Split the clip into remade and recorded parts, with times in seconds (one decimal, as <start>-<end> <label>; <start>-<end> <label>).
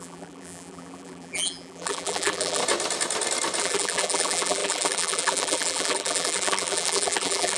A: 0.0-2.6 remade; 2.6-3.6 recorded; 3.6-7.6 remade